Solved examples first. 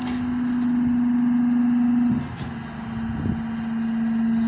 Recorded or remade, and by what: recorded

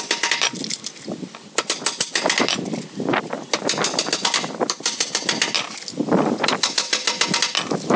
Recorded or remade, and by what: recorded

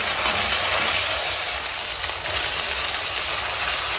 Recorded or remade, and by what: recorded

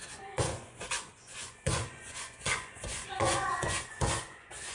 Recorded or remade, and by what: remade, vocoder, Vocos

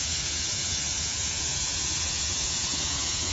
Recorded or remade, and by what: remade, vocoder, Vocos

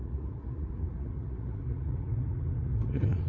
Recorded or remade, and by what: remade, vocoder, Vocos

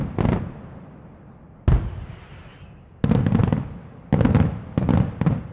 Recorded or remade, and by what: recorded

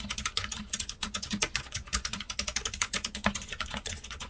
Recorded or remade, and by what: remade, vocoder, Vocos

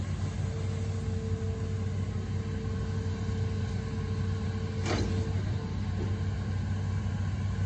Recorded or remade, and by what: recorded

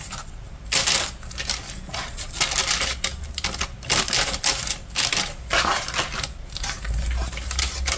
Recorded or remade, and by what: recorded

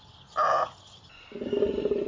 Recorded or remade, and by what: recorded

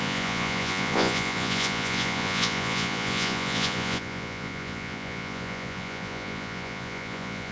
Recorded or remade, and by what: remade, vocoder, Vocos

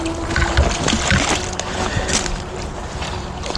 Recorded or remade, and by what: recorded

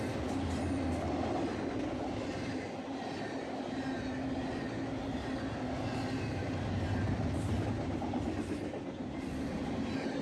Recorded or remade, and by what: recorded